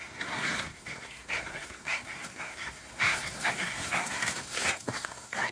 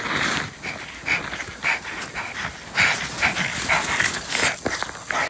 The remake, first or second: first